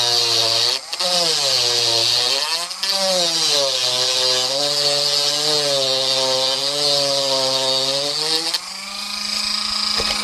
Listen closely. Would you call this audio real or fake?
real